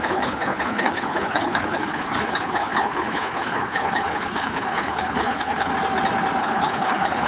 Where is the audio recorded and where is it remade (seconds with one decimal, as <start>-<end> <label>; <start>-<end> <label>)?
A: 0.0-5.7 remade; 5.7-6.4 recorded; 6.4-7.3 remade